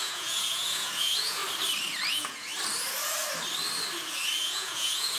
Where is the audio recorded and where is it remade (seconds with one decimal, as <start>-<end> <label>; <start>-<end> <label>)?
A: 0.0-1.4 remade; 1.4-2.1 recorded; 2.1-2.5 remade; 2.5-4.4 recorded; 4.4-5.2 remade